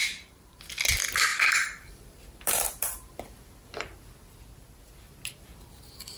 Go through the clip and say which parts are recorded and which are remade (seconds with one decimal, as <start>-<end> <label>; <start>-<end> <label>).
0.0-0.6 remade; 0.6-1.3 recorded; 1.3-3.4 remade; 3.4-6.2 recorded